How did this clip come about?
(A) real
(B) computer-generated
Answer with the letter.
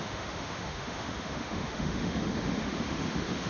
B